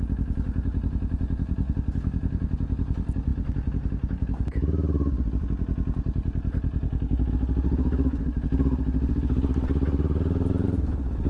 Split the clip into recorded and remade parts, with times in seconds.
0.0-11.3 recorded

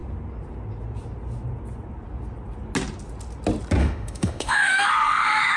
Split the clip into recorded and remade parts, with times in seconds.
0.0-3.8 recorded; 3.8-5.6 remade

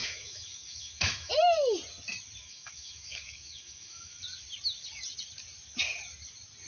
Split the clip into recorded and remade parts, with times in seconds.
0.0-1.3 remade; 1.3-2.4 recorded; 2.4-4.2 remade; 4.2-6.7 recorded